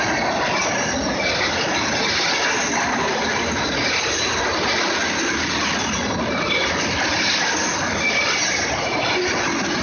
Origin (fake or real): real